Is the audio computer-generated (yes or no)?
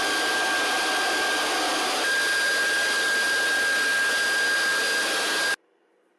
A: no